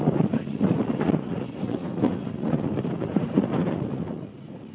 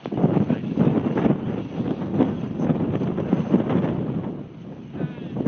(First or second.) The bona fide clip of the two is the second